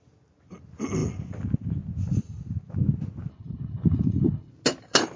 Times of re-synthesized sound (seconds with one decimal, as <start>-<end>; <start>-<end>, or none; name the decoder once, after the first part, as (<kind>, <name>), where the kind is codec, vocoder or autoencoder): 3.3-4.5 (codec, HILCodec)

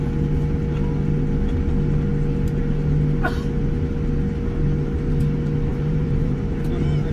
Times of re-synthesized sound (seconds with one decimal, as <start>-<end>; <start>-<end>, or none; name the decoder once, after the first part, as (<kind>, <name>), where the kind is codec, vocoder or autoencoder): 5.7-6.6 (vocoder, BigVGAN v2)

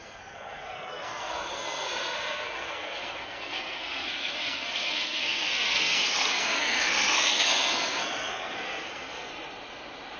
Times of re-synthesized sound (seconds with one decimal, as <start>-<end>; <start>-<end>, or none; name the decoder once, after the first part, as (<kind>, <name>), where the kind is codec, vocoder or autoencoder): 0.0-9.3 (codec, SNAC)

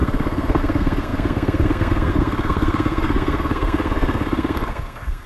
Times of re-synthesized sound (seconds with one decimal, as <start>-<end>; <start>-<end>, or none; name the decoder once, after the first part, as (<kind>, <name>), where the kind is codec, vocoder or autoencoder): 0.0-5.3 (codec, SNAC)

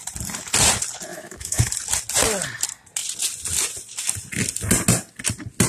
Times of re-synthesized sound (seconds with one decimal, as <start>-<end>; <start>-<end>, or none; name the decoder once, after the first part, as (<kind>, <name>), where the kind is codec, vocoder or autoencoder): 1.1-1.7 (autoencoder, DAC-VAE)

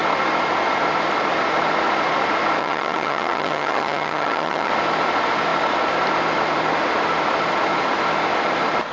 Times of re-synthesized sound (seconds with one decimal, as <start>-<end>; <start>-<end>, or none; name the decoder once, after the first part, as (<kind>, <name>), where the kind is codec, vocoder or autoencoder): 2.6-4.7 (vocoder, HiFi-GAN)

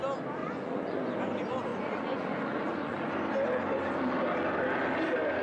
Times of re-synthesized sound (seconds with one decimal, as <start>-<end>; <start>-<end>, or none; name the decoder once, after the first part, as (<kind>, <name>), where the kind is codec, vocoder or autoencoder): 0.4-1.0 (vocoder, Vocos); 1.7-3.1

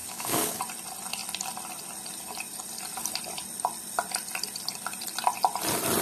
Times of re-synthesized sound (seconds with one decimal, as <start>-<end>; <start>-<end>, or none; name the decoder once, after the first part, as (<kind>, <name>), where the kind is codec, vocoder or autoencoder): 0.0-0.6 (codec, DAC)